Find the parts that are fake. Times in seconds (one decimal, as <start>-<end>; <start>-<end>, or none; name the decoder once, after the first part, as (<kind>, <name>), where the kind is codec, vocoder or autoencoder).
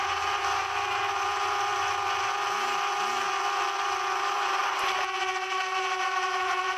0.0-1.0 (vocoder, BigVGAN v2)